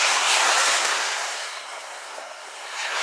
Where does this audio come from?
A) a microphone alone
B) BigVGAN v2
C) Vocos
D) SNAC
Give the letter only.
D